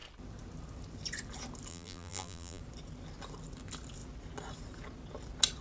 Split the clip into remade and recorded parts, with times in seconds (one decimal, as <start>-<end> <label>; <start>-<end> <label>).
0.0-1.7 recorded; 1.7-2.6 remade; 2.6-5.6 recorded